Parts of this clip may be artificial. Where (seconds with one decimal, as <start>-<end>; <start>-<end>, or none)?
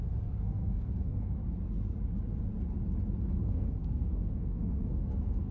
0.0-1.4; 3.3-5.5